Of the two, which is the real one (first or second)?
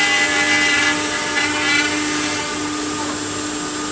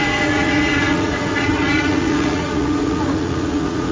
first